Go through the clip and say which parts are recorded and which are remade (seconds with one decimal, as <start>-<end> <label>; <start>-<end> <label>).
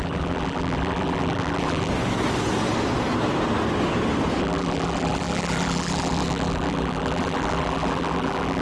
0.0-1.9 remade; 1.9-4.4 recorded; 4.4-8.6 remade